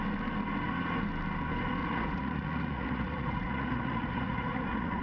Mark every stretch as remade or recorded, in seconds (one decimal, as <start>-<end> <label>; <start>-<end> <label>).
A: 0.0-1.8 recorded; 1.8-5.0 remade